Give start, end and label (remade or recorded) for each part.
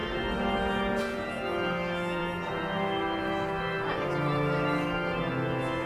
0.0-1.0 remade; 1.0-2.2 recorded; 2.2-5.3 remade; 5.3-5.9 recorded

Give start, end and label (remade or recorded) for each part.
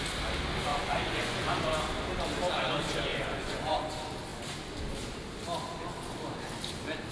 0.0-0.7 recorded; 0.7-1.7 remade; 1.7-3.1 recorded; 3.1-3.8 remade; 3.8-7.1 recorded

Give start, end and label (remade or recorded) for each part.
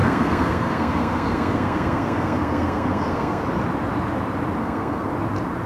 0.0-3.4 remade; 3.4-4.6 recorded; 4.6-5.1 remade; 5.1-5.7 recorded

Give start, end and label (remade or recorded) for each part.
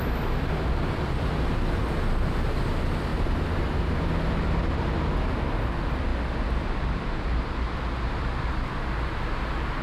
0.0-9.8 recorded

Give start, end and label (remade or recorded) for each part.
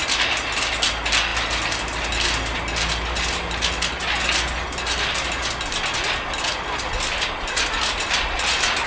0.0-8.9 recorded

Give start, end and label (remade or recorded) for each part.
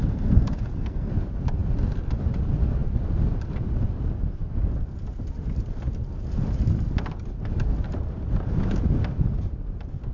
0.0-1.1 remade; 1.1-10.1 recorded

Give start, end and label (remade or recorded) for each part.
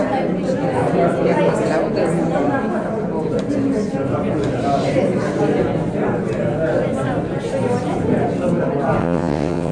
0.0-9.0 recorded; 9.0-9.7 remade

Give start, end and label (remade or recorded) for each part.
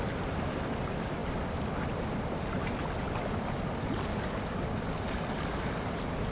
0.0-1.2 recorded; 1.2-5.0 remade; 5.0-6.3 recorded